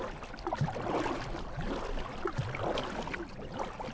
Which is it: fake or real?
real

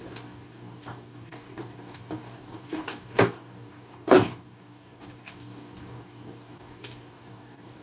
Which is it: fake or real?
fake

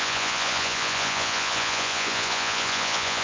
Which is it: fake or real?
fake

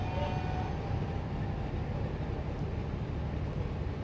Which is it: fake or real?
real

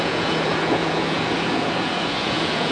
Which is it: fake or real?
fake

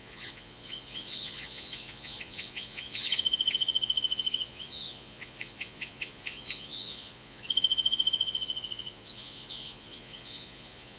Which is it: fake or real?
fake